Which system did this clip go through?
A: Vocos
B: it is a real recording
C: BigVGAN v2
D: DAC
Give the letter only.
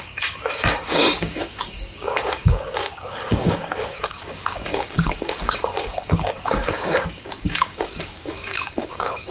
D